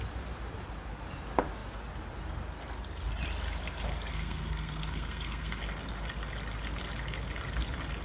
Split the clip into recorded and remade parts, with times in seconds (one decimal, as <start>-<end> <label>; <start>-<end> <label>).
0.0-4.1 recorded; 4.1-5.6 remade; 5.6-8.0 recorded